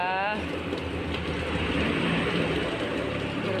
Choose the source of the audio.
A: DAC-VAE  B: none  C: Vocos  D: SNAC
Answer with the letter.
B